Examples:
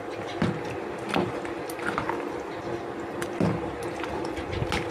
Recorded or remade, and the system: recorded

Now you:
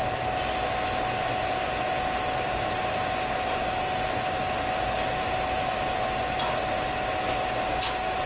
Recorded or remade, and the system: recorded